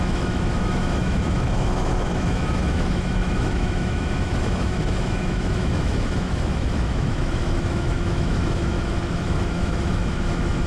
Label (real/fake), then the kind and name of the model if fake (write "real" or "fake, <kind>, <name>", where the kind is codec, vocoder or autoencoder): fake, autoencoder, DAC-VAE